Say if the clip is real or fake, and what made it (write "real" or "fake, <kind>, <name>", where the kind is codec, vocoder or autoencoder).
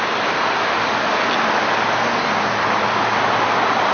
real